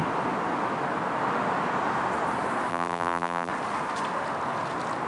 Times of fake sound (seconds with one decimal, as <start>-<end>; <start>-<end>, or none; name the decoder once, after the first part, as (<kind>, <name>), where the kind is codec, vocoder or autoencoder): 2.7-3.5 (vocoder, BigVGAN v2)